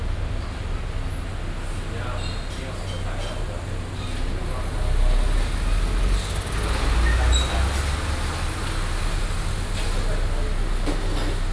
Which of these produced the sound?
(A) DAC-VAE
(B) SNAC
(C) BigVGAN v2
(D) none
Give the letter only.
D